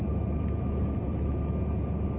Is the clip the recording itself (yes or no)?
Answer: yes